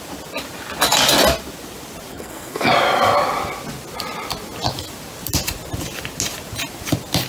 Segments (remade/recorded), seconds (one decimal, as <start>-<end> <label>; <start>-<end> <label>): 0.0-2.1 recorded; 2.1-2.7 remade; 2.7-7.3 recorded